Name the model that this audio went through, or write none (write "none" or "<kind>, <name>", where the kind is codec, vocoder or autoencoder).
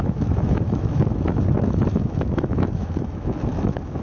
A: autoencoder, DAC-VAE